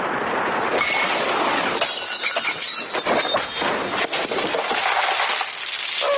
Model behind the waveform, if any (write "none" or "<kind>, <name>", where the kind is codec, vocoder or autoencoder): none